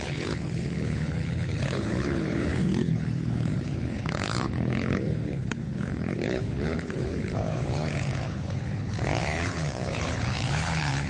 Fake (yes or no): yes